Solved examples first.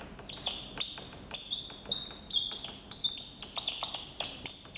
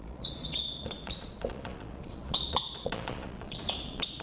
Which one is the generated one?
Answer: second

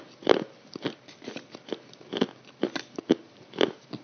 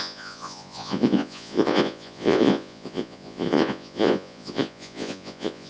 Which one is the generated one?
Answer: second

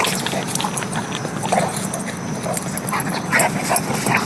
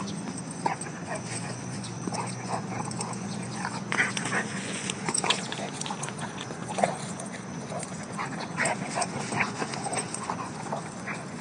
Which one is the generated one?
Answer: second